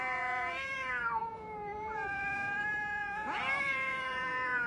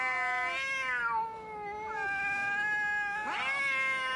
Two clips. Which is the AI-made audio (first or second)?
first